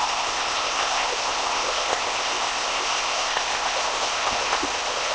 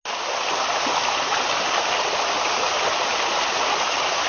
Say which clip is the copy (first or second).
first